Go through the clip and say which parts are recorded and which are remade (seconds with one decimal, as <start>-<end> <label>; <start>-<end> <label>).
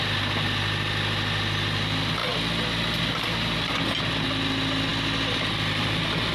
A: 0.0-4.9 recorded; 4.9-6.3 remade